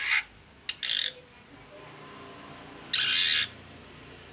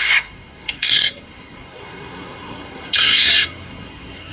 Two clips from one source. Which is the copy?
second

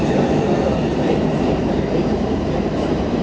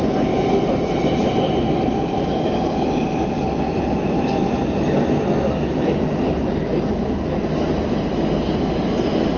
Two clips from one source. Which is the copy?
first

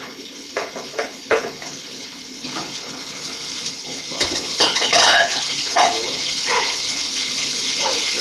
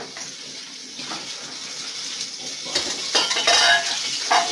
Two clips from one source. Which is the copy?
first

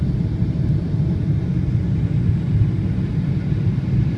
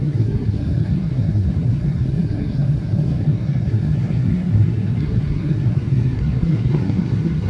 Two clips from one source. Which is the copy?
second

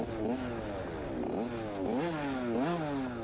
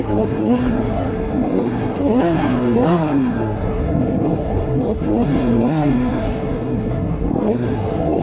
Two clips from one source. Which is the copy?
second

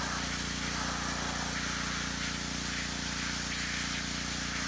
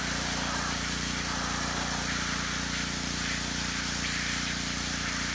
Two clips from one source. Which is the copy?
second